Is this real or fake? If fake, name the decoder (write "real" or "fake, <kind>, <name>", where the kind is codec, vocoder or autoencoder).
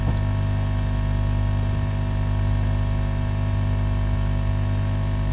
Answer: real